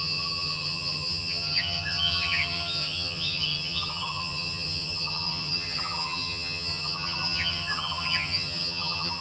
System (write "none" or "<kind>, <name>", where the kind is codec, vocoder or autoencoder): vocoder, HiFi-GAN